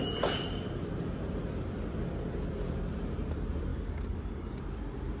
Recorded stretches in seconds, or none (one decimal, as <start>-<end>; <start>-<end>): 0.0-3.7; 4.6-5.2

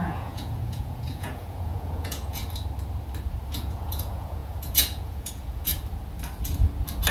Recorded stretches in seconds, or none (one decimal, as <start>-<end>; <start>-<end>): 2.4-3.5; 5.7-7.1